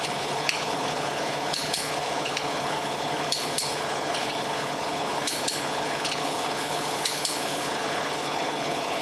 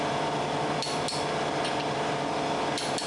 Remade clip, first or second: first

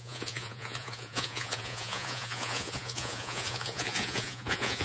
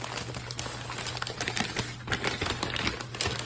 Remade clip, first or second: first